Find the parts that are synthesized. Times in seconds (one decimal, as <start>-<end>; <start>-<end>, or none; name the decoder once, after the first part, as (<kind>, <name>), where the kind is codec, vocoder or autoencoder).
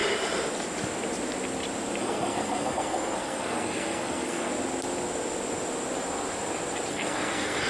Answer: 2.0-4.5 (codec, SNAC); 6.9-7.7